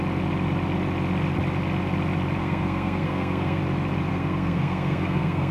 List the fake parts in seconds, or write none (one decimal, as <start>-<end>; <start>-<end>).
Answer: 2.4-3.6; 4.1-5.5